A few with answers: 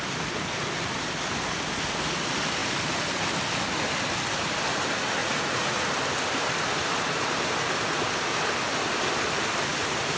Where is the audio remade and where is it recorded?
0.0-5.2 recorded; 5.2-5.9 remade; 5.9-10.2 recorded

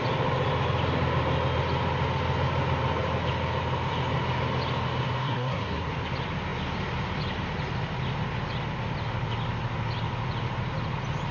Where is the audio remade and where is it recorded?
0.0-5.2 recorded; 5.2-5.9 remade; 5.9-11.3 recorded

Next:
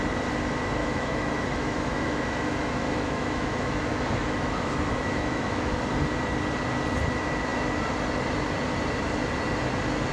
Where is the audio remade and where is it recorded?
0.0-0.8 recorded; 0.8-5.8 remade; 5.8-10.1 recorded

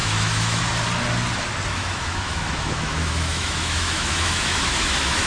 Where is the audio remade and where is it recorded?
0.0-0.6 remade; 0.6-1.7 recorded; 1.7-5.3 remade

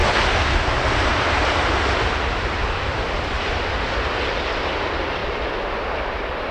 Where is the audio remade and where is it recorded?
0.0-6.5 recorded

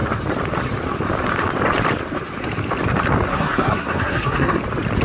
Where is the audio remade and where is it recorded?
0.0-3.3 recorded; 3.3-4.6 remade; 4.6-5.0 recorded